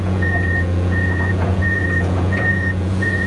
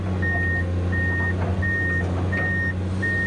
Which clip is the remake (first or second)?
first